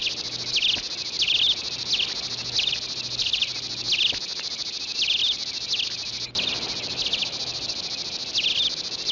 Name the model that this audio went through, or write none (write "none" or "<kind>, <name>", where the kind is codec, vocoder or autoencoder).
none